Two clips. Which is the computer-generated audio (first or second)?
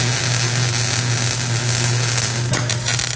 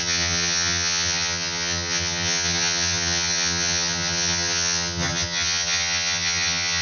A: second